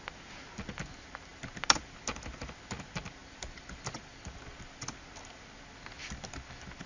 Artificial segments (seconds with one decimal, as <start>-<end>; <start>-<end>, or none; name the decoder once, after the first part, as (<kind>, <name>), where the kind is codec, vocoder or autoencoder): none